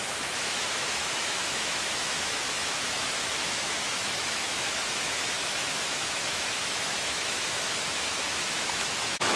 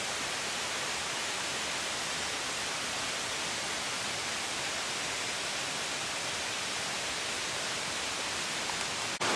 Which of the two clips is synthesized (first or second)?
first